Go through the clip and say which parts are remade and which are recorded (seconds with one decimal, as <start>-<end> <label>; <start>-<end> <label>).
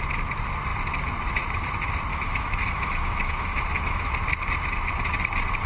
0.0-2.1 recorded; 2.1-4.1 remade; 4.1-5.7 recorded